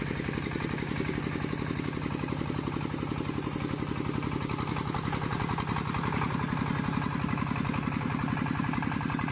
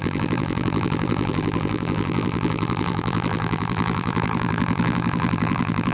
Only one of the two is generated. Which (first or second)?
second